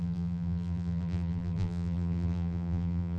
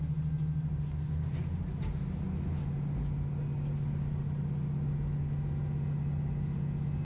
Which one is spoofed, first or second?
first